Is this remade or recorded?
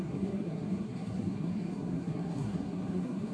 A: remade